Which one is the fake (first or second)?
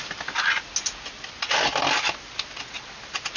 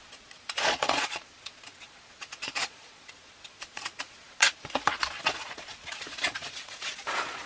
second